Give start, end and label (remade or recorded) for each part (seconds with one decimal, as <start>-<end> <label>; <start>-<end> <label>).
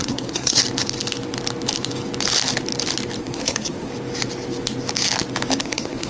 0.0-0.6 remade; 0.6-3.2 recorded; 3.2-3.9 remade; 3.9-5.6 recorded; 5.6-6.1 remade